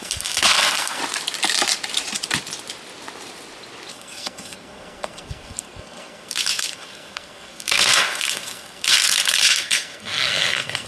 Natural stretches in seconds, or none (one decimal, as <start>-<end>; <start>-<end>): 1.0-3.9